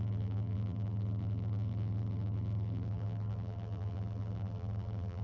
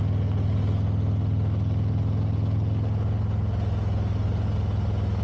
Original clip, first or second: second